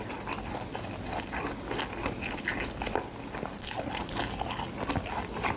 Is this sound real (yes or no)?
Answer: yes